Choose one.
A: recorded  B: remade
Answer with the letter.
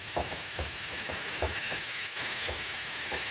B